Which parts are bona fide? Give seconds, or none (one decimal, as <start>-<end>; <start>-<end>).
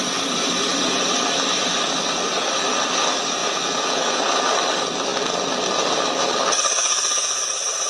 0.0-3.4; 4.2-6.8; 7.4-7.9